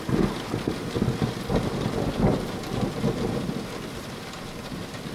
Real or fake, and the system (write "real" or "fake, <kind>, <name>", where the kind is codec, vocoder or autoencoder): real